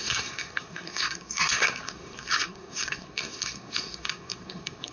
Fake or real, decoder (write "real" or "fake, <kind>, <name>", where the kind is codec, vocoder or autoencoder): fake, codec, SNAC